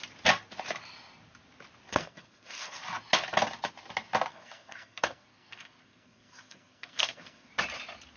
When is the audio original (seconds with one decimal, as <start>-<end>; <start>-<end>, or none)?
0.0-1.9; 2.8-4.3; 7.5-8.2